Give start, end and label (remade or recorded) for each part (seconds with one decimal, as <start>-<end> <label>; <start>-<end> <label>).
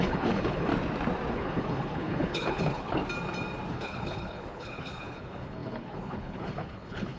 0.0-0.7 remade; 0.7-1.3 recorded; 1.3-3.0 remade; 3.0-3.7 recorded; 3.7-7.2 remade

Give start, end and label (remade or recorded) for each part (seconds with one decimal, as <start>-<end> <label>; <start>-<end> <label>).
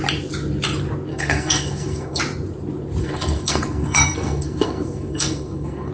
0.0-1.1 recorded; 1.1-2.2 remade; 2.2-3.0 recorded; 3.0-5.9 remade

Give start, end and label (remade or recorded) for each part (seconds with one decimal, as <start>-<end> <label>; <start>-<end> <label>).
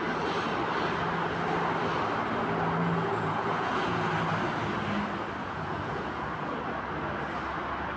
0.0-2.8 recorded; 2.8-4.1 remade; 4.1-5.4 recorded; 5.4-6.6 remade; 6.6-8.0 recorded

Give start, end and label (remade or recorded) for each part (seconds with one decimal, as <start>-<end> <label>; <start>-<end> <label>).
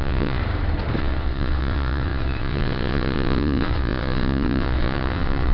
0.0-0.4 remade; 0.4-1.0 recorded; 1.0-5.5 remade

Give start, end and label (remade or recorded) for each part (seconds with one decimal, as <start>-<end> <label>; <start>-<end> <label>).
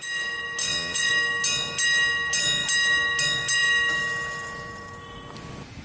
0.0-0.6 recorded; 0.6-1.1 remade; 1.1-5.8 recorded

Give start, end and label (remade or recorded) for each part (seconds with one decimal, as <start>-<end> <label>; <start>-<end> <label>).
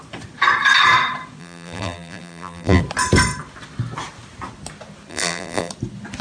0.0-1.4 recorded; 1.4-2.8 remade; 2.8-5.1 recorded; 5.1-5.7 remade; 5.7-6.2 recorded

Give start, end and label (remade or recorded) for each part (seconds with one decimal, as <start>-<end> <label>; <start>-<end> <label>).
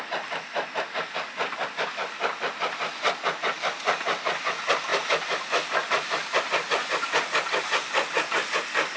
0.0-9.0 recorded